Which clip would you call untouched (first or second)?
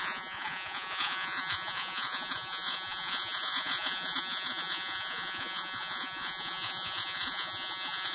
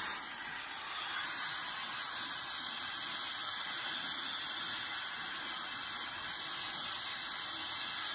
second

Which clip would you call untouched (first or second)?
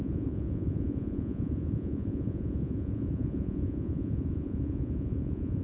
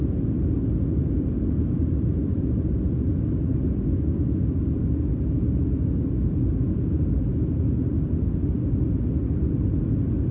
second